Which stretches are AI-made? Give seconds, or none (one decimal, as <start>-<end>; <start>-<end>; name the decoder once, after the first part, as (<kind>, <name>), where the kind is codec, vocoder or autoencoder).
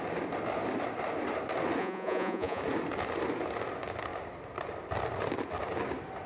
1.8-2.6 (vocoder, Vocos)